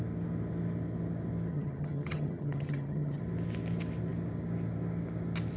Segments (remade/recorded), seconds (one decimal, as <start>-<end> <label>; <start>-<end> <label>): 0.0-1.5 recorded; 1.5-3.2 remade; 3.2-5.6 recorded